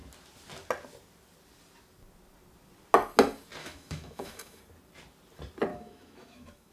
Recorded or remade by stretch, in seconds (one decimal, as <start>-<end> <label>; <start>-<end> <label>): 0.0-3.6 recorded; 3.6-4.6 remade; 4.6-5.7 recorded; 5.7-6.7 remade